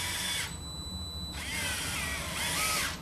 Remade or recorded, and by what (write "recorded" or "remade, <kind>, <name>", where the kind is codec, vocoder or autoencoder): recorded